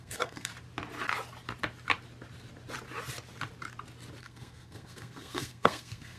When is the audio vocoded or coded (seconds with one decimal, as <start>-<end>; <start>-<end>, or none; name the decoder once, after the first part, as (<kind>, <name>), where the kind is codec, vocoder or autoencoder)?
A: 0.0-0.5 (codec, SNAC); 4.2-6.2